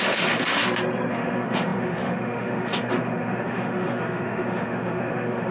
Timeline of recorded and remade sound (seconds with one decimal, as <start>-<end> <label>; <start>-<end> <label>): 0.0-0.6 remade; 0.6-1.1 recorded; 1.1-5.5 remade